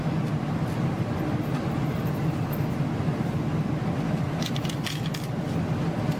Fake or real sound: real